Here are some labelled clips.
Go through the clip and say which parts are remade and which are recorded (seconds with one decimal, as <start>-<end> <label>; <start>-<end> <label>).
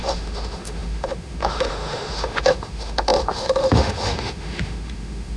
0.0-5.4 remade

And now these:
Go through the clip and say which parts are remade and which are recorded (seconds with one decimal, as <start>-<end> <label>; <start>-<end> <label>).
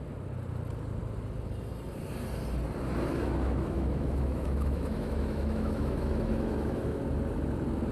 0.0-3.1 recorded; 3.1-7.0 remade; 7.0-7.9 recorded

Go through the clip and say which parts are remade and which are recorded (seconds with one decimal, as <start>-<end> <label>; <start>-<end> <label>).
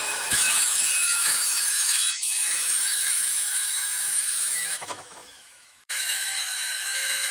0.0-7.3 remade